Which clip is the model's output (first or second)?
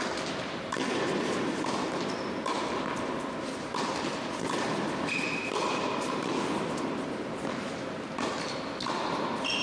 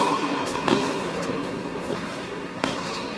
second